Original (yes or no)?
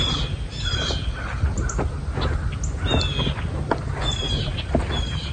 yes